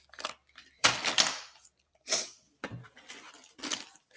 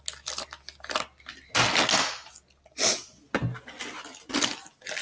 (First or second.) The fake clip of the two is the first